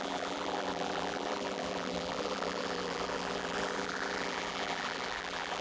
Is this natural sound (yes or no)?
no